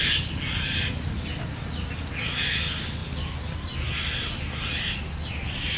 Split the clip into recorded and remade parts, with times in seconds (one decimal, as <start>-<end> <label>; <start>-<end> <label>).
0.0-5.8 recorded